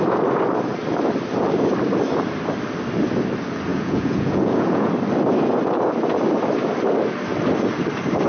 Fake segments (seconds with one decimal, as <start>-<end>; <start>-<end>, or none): 3.7-4.9